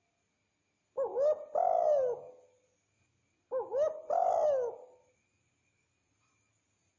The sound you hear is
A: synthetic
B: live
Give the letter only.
B